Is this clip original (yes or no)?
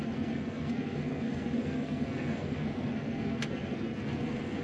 no